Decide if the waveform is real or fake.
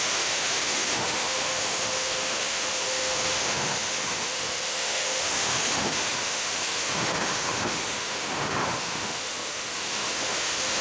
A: fake